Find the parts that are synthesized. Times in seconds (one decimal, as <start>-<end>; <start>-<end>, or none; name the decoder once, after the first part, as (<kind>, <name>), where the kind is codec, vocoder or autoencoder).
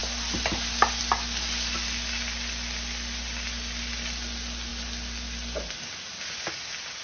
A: none